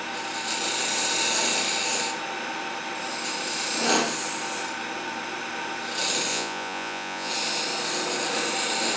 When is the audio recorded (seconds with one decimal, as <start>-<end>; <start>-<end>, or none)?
0.0-6.3; 7.3-9.0